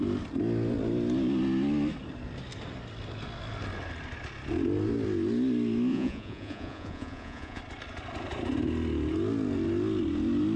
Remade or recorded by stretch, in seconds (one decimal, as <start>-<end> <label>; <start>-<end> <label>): 0.0-5.9 recorded; 5.9-7.6 remade; 7.6-10.6 recorded